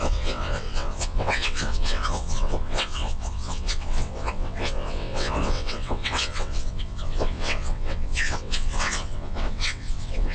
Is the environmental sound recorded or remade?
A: remade